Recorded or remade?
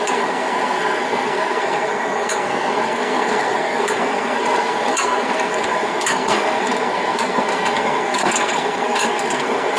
remade